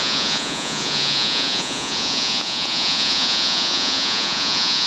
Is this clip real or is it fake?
fake